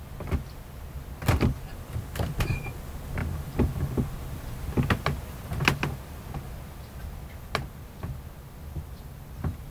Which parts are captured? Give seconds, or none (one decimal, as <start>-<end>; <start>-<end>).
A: 0.0-3.2; 4.5-9.7